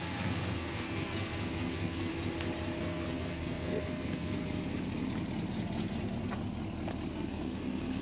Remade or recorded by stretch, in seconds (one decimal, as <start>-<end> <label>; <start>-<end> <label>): 0.0-2.1 remade; 2.1-2.8 recorded; 2.8-4.4 remade; 4.4-7.1 recorded; 7.1-8.0 remade